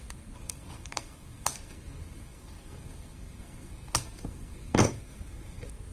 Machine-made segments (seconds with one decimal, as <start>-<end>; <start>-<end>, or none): 0.0-5.9